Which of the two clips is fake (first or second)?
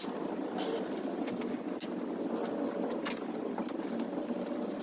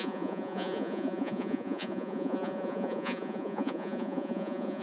second